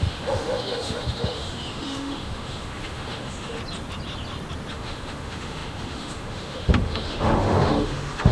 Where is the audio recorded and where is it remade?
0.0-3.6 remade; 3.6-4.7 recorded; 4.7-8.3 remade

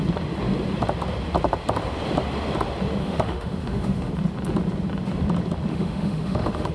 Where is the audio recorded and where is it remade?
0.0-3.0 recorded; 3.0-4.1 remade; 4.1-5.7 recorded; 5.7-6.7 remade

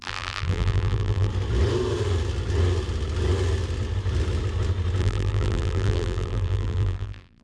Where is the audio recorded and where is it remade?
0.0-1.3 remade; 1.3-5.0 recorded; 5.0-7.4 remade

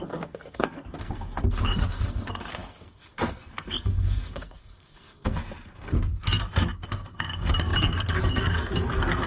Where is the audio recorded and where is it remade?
0.0-9.3 remade

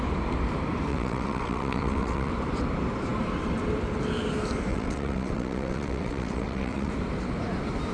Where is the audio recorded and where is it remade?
0.0-0.9 recorded; 0.9-2.3 remade; 2.3-4.7 recorded; 4.7-6.9 remade; 6.9-7.9 recorded